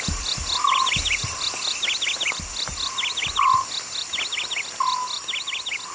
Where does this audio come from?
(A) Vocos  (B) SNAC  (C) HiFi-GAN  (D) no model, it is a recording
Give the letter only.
D